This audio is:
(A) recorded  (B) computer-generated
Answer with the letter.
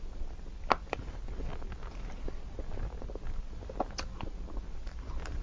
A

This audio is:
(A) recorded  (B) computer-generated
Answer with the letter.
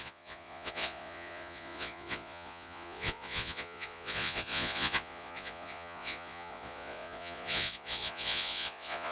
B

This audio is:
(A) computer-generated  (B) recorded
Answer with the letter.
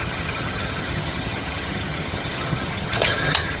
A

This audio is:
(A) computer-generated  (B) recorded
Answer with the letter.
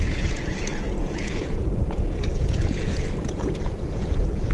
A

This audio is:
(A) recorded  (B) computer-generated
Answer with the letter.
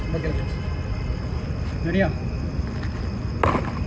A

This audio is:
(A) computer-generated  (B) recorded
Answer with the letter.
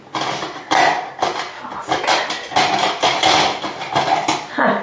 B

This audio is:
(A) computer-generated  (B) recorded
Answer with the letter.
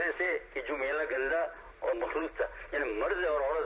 A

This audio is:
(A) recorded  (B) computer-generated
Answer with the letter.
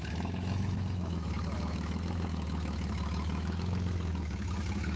B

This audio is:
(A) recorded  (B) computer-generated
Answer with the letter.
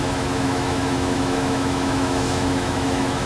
B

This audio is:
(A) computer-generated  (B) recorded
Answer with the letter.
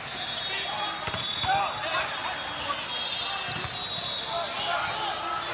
B